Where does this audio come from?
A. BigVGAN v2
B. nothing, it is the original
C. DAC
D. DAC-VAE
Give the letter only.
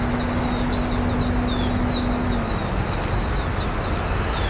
B